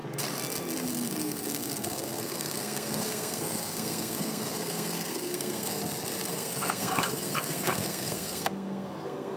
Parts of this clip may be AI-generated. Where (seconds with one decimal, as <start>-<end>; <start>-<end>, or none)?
0.9-5.8; 6.3-9.4

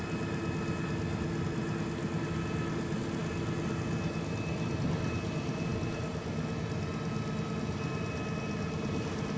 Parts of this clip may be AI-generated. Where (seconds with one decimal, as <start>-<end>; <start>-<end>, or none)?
none

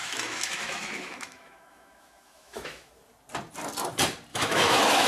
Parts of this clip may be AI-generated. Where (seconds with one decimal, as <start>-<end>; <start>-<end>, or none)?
0.0-2.9; 4.3-5.1

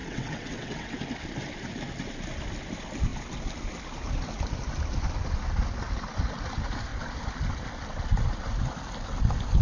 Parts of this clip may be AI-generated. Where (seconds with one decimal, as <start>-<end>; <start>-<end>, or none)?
0.0-1.0